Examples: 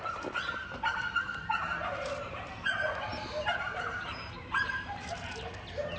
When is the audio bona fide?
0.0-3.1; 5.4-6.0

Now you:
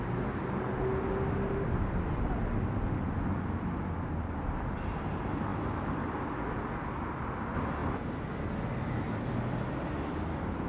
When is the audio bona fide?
0.0-10.7